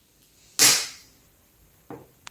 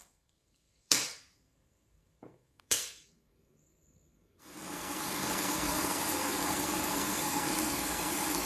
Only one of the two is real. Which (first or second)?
first